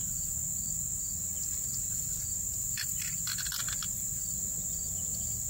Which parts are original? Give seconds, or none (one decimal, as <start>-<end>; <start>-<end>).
0.0-5.5